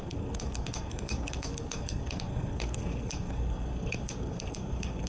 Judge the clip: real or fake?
fake